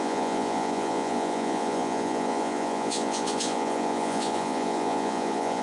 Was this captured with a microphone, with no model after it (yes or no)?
no